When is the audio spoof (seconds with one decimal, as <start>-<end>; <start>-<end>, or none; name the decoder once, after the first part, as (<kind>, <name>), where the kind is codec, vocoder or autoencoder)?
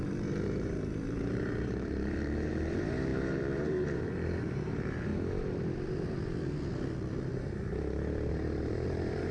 0.0-5.1 (vocoder, BigVGAN v2); 8.3-9.3